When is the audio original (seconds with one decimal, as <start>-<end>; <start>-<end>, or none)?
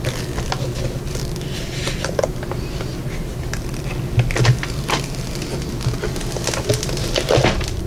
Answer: 0.0-7.9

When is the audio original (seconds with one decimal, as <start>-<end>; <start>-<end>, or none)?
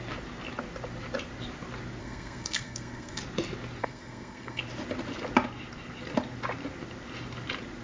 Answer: 0.0-2.0; 3.2-3.8; 4.6-7.8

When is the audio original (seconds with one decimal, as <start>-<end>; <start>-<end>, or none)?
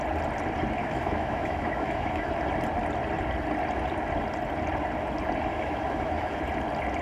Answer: 0.0-0.8; 2.3-5.5; 6.4-7.0